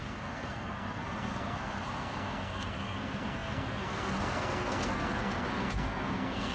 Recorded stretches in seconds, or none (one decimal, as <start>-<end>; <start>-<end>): none